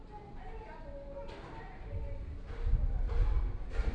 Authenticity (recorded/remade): recorded